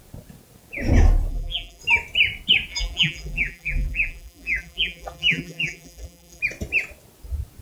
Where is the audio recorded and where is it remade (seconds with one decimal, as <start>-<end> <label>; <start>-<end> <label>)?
0.0-1.3 recorded; 1.3-1.8 remade; 1.8-2.7 recorded; 2.7-6.4 remade; 6.4-7.6 recorded